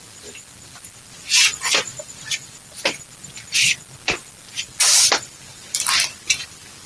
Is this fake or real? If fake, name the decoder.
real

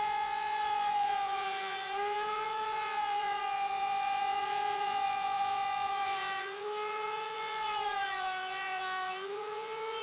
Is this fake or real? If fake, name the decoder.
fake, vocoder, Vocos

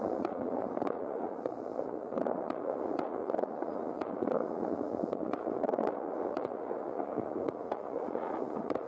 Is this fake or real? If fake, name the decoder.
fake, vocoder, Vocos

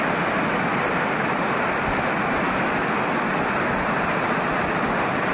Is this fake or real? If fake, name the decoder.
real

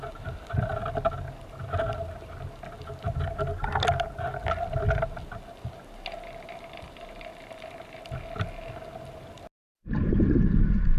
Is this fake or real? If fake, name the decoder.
real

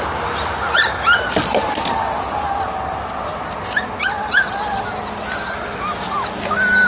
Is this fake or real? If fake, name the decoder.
real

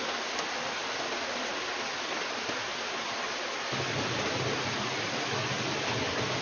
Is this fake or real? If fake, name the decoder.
real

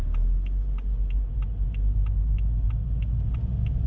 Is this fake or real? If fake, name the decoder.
real